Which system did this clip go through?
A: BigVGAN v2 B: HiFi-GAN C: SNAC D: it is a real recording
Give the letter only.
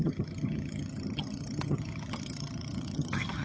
B